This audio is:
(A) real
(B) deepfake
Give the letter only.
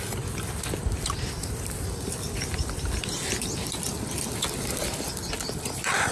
A